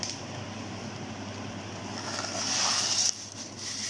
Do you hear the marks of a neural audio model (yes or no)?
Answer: no